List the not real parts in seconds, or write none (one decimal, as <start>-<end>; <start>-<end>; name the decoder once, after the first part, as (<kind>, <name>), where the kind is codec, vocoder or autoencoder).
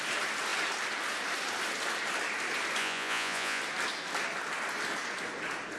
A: 2.8-3.6 (vocoder, Vocos)